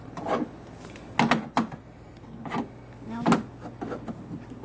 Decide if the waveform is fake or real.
real